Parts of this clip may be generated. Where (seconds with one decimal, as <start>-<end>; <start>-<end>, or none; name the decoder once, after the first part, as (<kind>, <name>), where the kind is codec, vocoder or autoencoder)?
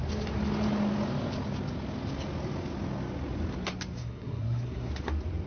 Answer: 4.0-4.9 (codec, SNAC)